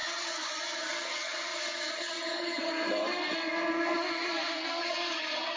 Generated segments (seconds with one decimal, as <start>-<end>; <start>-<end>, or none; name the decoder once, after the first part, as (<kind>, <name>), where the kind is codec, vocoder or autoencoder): 0.0-2.6 (vocoder, HiFi-GAN); 4.8-5.6